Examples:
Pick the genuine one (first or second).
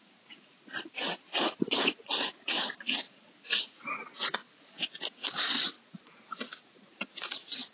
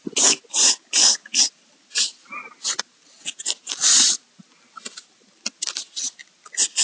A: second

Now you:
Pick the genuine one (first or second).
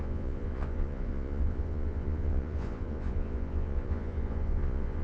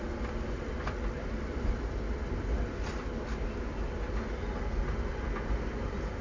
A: second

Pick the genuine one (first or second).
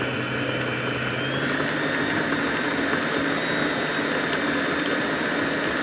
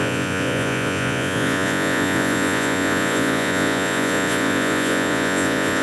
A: first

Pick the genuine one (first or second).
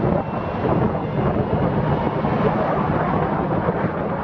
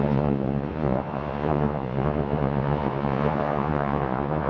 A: first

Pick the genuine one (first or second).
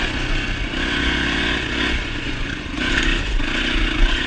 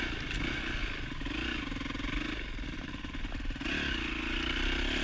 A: second